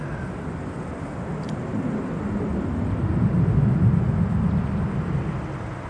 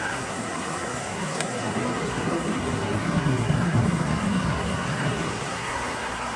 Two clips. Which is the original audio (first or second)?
first